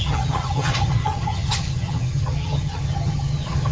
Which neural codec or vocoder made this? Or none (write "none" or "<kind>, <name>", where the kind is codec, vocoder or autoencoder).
vocoder, HiFi-GAN